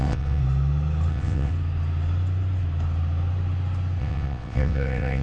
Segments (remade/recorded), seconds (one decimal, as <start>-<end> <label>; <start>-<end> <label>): 0.0-0.4 remade; 0.4-1.1 recorded; 1.1-1.5 remade; 1.5-4.0 recorded; 4.0-5.2 remade